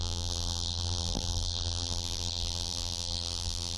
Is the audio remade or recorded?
remade